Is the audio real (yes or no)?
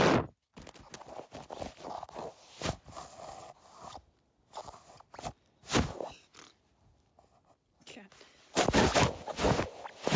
yes